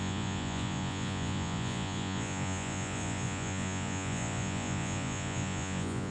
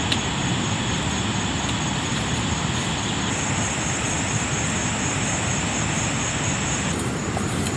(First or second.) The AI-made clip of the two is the first